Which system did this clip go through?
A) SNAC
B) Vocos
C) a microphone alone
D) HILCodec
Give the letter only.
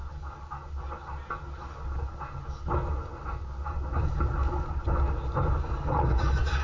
C